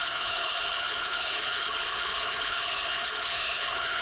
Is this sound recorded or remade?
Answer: remade